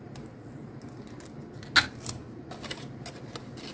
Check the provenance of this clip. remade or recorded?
recorded